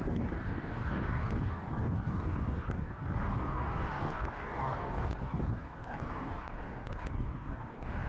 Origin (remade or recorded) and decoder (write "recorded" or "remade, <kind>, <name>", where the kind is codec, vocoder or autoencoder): remade, codec, DAC